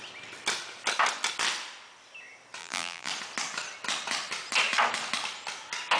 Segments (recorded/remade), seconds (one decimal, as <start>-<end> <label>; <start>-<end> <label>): 0.0-2.6 recorded; 2.6-3.1 remade; 3.1-6.0 recorded